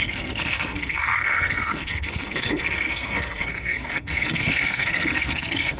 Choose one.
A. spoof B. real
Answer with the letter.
A